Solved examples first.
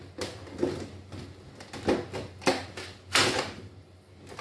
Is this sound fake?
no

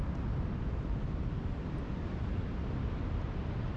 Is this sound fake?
no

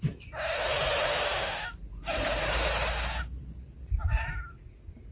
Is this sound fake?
no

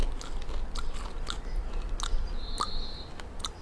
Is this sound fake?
no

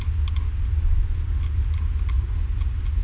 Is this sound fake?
no